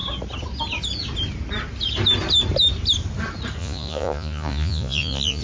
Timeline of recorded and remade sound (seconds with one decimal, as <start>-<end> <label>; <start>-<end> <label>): 0.0-3.6 recorded; 3.6-5.4 remade